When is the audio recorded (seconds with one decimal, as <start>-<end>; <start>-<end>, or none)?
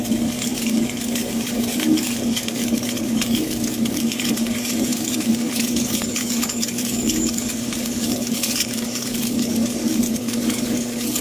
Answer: none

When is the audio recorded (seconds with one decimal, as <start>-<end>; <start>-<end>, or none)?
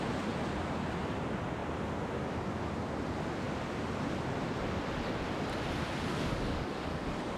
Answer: 0.0-6.1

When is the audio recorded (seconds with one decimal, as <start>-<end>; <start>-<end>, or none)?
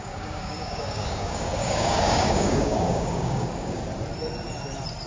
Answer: 3.8-5.1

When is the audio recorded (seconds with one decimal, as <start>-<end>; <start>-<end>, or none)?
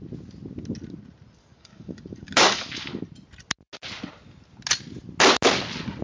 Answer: 0.0-1.4; 3.0-6.0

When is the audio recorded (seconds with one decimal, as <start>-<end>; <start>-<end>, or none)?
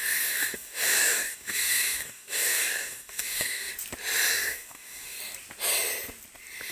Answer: 3.7-4.3; 5.2-6.7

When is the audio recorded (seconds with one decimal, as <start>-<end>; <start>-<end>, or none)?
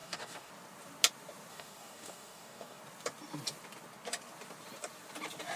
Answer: 0.5-1.5; 2.8-5.6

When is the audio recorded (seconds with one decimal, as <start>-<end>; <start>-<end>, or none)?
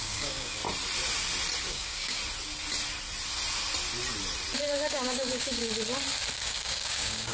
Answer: 0.6-1.7; 2.2-4.9; 5.6-6.3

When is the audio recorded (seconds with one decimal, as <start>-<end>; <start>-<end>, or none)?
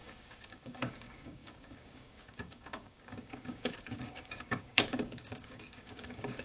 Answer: none